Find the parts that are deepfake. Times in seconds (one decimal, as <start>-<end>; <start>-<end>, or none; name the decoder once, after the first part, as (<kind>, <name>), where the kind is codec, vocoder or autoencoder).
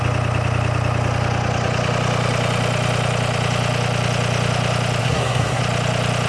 5.0-5.6 (codec, SNAC)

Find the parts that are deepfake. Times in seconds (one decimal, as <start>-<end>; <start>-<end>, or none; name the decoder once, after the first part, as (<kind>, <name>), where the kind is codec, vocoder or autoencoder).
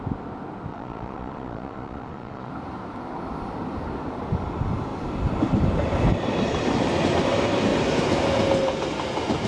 0.7-2.5 (vocoder, Vocos)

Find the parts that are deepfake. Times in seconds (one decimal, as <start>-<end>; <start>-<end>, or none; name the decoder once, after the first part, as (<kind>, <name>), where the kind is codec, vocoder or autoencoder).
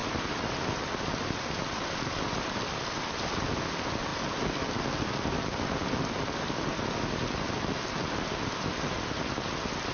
none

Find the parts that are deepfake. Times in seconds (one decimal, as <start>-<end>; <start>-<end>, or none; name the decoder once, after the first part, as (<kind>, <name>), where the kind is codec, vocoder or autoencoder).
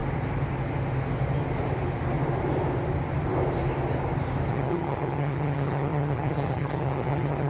4.5-7.5 (vocoder, HiFi-GAN)